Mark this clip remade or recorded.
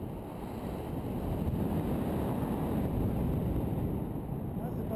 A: recorded